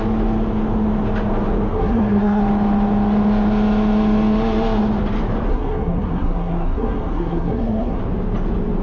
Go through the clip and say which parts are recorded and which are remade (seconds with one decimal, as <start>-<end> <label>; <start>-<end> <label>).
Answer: 0.0-1.7 recorded; 1.7-2.4 remade; 2.4-5.5 recorded; 5.5-8.0 remade; 8.0-8.8 recorded